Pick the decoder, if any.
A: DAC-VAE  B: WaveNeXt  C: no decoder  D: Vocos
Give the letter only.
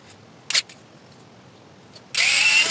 C